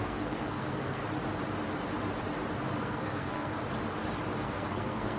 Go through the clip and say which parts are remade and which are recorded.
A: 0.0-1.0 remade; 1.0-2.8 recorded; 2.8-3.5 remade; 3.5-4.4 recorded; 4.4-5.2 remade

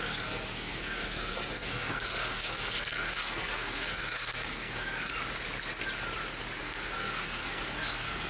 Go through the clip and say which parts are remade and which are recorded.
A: 0.0-5.1 remade; 5.1-6.6 recorded; 6.6-8.3 remade

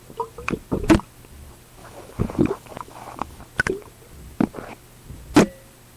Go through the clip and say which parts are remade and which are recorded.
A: 0.0-1.8 recorded; 1.8-3.4 remade; 3.4-6.0 recorded